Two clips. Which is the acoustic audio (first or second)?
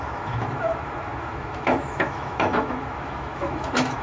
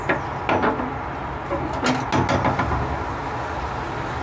second